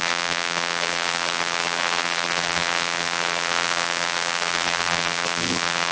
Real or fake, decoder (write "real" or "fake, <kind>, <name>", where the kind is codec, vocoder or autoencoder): fake, vocoder, BigVGAN v2